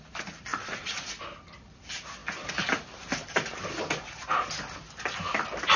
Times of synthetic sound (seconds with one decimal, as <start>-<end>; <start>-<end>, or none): 0.5-1.1